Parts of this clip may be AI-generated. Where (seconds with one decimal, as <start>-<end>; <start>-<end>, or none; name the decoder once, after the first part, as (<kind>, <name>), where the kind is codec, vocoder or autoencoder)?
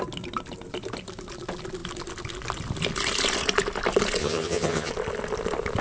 4.2-4.9 (vocoder, HiFi-GAN)